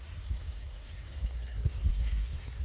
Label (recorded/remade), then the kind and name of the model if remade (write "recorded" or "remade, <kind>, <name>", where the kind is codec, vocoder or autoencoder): remade, codec, SNAC